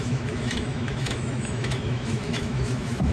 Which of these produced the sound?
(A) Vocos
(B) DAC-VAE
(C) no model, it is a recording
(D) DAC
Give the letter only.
B